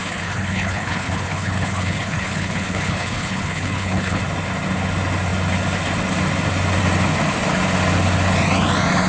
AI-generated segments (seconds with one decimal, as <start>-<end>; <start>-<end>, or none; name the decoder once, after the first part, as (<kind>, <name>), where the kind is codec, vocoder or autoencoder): 0.0-4.2 (codec, HILCodec)